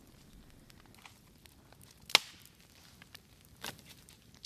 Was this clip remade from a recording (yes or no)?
no